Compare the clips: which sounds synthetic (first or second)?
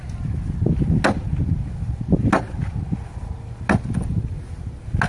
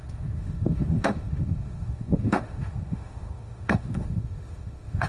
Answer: second